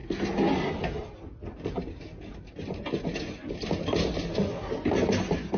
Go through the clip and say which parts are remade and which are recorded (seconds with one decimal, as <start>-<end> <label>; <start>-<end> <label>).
0.0-5.6 recorded

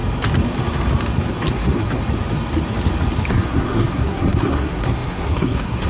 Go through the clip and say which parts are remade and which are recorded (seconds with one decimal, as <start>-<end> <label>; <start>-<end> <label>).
0.0-1.5 recorded; 1.5-2.0 remade; 2.0-3.3 recorded; 3.3-5.9 remade

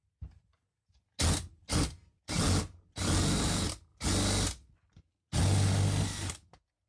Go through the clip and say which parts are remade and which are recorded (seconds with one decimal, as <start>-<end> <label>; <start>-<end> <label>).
0.0-6.9 recorded